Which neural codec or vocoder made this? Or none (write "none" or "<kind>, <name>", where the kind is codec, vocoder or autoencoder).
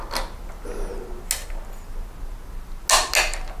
none